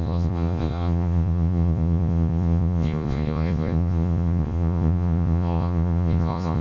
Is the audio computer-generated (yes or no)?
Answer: yes